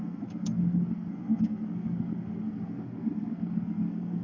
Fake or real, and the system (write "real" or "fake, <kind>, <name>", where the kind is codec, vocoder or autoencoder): fake, codec, SNAC